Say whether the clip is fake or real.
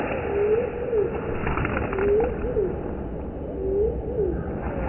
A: real